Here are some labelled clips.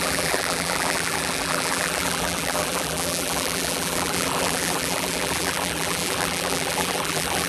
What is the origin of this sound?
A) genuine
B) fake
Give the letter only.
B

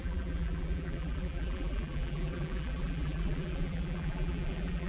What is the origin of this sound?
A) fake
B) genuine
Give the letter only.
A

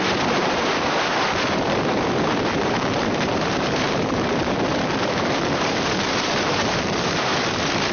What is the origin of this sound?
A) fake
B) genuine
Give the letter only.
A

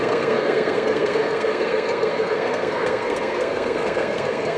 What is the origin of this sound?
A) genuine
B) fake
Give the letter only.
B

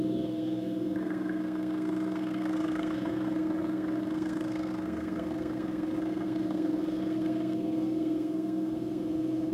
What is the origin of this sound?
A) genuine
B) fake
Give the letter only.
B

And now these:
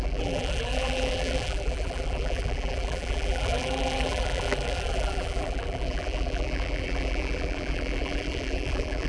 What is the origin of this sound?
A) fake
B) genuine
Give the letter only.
A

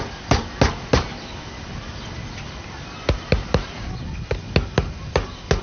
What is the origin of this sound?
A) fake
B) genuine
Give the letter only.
B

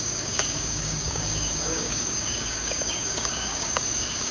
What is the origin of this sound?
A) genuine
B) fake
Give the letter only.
B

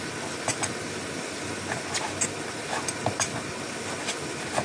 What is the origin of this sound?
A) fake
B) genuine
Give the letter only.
B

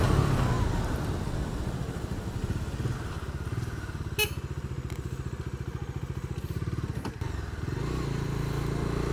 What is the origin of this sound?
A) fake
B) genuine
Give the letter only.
B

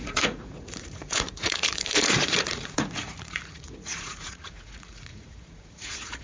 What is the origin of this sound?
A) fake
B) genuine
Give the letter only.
A